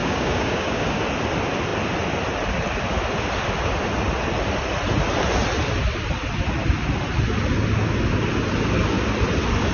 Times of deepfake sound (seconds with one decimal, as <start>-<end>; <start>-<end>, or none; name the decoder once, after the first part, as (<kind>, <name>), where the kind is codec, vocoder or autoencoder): 0.0-1.0 (codec, DAC)